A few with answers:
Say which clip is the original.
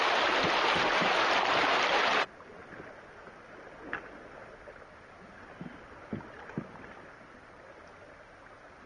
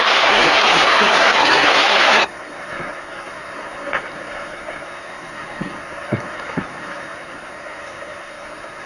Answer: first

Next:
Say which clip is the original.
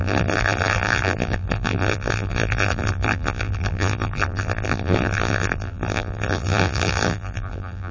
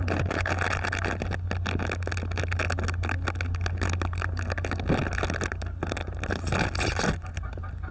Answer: second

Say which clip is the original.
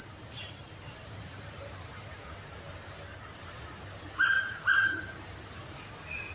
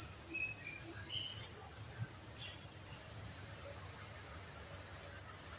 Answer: second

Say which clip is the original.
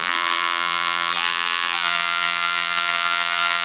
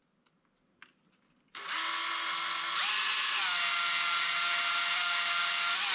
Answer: second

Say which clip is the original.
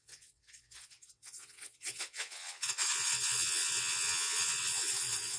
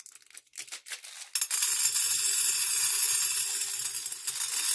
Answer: second